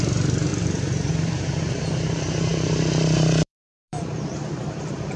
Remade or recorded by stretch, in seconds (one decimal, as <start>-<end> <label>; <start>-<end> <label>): 0.0-5.2 remade